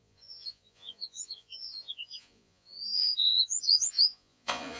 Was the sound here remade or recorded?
remade